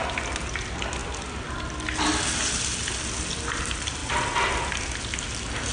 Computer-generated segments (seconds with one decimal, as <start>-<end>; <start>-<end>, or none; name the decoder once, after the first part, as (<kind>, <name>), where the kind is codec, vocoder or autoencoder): none

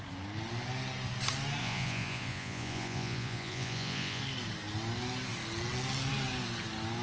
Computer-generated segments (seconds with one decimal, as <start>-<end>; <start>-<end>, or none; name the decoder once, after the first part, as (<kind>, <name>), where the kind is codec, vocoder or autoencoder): 1.6-4.2 (vocoder, Vocos)

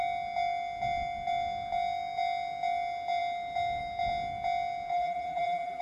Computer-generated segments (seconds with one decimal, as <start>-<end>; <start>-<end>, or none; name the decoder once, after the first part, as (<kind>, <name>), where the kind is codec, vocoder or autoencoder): 4.9-5.8 (vocoder, BigVGAN v2)

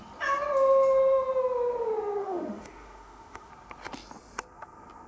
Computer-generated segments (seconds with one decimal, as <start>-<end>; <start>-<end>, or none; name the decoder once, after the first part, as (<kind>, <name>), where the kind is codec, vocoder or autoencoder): 2.2-3.5 (autoencoder, DAC-VAE)

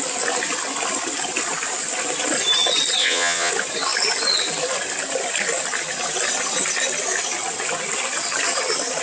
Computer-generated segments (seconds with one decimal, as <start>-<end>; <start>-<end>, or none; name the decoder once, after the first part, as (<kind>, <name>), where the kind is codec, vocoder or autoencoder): 3.0-3.5 (vocoder, WaveNeXt)

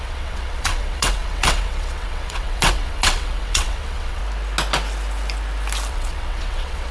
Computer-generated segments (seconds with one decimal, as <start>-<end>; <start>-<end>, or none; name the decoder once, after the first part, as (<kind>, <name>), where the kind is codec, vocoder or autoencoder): 0.0-4.2 (vocoder, WaveNeXt); 5.9-6.9

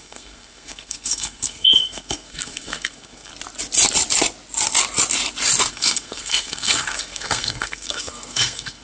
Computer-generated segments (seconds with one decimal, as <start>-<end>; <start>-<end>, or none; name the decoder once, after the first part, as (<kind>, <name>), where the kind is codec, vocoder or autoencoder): 0.0-3.3 (codec, SNAC); 5.7-8.8

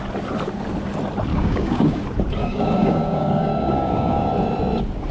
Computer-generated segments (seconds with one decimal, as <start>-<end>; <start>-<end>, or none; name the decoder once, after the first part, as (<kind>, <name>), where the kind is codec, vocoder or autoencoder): 1.3-2.0 (codec, DAC); 2.4-4.3